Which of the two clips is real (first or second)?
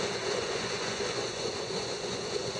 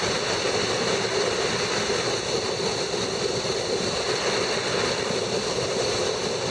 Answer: second